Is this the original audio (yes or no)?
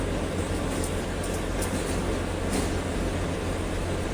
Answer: yes